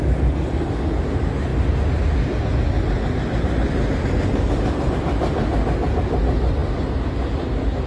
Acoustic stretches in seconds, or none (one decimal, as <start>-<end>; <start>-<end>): 0.0-7.9